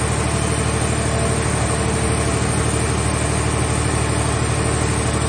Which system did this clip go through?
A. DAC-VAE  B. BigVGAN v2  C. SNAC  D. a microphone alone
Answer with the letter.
D